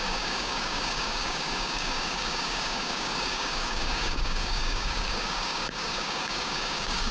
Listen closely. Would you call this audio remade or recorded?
remade